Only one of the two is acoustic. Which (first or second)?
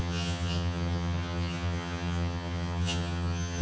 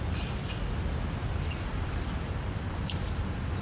second